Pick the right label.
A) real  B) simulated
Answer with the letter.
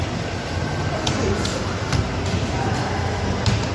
A